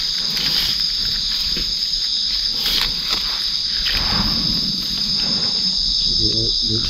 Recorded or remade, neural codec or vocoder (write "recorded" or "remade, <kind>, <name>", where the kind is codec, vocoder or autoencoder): recorded